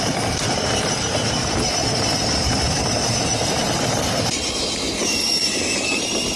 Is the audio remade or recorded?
recorded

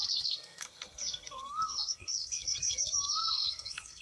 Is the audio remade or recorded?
remade